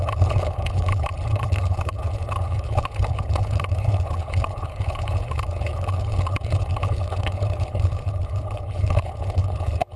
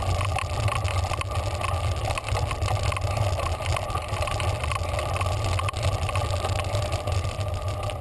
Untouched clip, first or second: second